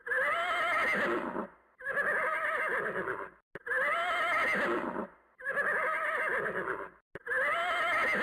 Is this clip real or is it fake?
real